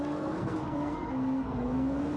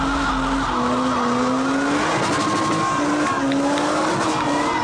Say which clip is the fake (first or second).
first